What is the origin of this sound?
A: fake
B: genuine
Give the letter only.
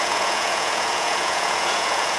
A